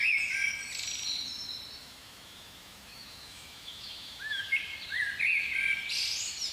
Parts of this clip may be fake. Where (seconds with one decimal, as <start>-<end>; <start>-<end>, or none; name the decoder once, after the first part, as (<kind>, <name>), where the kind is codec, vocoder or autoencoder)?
1.8-4.6 (autoencoder, DAC-VAE)